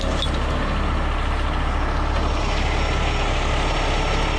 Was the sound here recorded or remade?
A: recorded